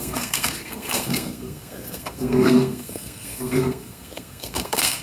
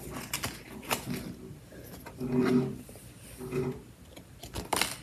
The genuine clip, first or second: second